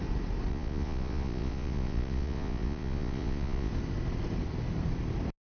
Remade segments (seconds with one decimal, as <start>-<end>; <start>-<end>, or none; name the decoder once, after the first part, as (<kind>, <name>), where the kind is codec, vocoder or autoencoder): 0.5-3.7 (vocoder, Vocos)